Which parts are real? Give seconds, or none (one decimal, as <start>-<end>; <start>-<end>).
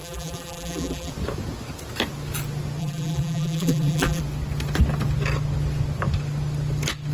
1.1-2.8; 4.2-7.1